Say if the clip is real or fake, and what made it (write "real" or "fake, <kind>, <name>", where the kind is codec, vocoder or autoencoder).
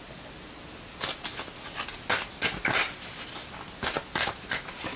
real